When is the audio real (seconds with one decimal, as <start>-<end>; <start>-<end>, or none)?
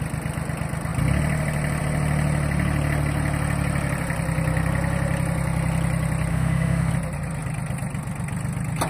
0.0-6.3; 6.9-8.9